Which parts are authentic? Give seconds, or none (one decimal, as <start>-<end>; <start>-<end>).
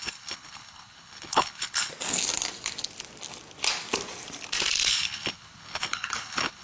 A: 1.9-4.9